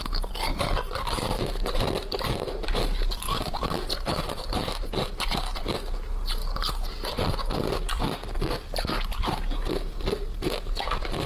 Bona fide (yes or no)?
yes